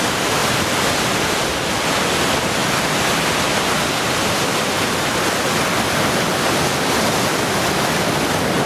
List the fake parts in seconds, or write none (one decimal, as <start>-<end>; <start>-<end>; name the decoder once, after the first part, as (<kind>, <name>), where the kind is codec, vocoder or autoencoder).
0.4-1.7 (vocoder, BigVGAN v2); 2.6-4.1